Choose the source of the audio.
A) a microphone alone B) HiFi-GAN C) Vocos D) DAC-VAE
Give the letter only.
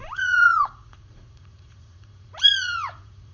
C